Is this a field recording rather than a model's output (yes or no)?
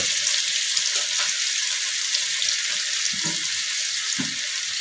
yes